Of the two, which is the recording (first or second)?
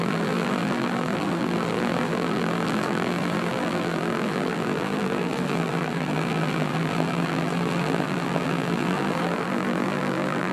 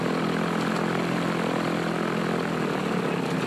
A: second